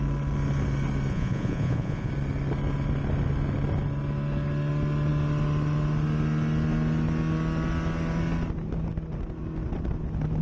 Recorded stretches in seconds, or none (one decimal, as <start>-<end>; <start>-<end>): 0.0-1.1; 2.1-10.4